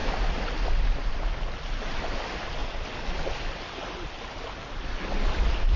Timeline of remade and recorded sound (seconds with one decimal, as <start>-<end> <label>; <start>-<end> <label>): 0.0-5.8 recorded